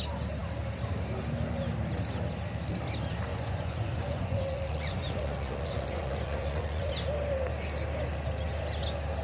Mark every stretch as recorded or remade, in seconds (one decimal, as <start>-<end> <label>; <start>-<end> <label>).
0.0-3.3 recorded; 3.3-6.9 remade; 6.9-9.2 recorded